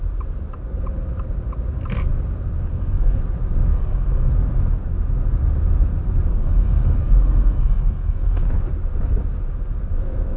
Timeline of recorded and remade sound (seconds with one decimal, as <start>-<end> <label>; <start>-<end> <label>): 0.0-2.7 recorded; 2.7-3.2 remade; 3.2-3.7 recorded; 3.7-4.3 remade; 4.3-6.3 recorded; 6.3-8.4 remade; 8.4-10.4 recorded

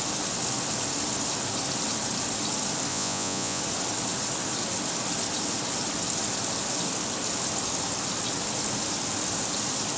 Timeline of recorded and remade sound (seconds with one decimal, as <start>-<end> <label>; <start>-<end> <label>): 0.0-2.9 recorded; 2.9-3.6 remade; 3.6-10.0 recorded

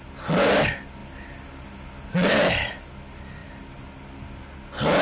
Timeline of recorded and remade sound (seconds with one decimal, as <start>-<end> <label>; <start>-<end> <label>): 0.0-5.0 recorded